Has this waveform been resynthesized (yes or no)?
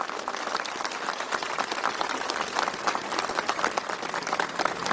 no